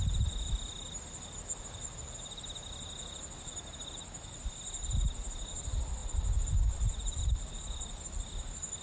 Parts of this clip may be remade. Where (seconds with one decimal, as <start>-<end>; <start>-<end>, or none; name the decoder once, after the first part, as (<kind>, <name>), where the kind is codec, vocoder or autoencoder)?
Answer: none